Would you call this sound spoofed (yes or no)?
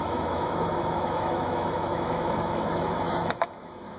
yes